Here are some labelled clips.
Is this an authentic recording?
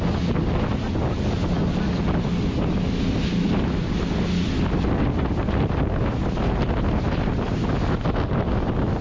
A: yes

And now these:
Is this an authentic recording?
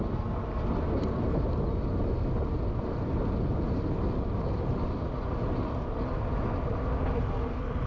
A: yes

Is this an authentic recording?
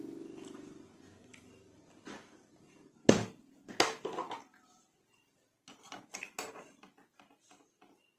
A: yes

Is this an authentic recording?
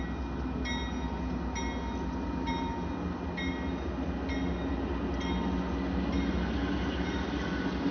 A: yes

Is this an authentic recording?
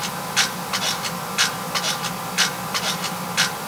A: yes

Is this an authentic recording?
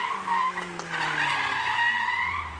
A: yes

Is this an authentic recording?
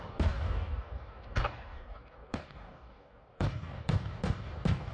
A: no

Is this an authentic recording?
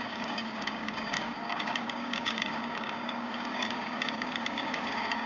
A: no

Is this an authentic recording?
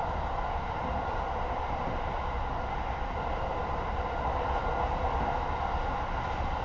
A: yes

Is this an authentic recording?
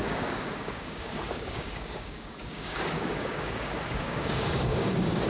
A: no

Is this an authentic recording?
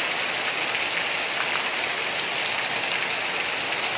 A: yes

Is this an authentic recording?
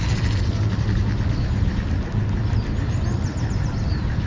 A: yes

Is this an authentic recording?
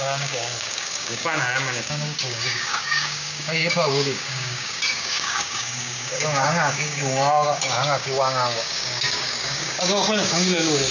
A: no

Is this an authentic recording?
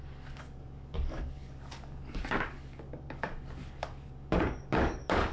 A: no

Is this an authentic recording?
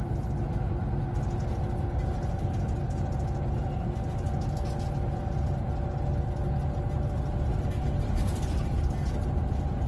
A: yes